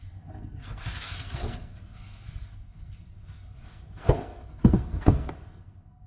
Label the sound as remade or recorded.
remade